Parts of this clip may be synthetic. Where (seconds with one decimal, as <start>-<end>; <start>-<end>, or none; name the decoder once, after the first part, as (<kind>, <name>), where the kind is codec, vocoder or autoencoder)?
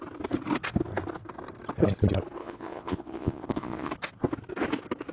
2.4-3.9 (vocoder, Vocos)